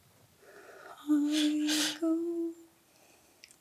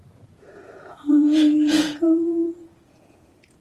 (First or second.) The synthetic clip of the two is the second